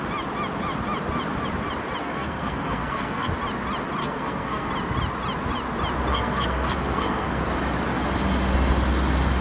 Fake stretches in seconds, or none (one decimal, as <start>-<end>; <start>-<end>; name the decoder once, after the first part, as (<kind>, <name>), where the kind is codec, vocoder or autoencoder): 2.0-3.3 (codec, SNAC); 4.0-4.7; 6.1-7.4